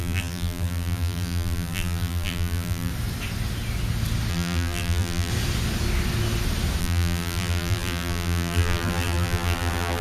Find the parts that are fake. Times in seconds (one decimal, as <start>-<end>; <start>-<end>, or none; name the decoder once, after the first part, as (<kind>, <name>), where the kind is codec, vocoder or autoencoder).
0.0-2.9 (vocoder, BigVGAN v2); 4.3-5.3; 6.8-10.0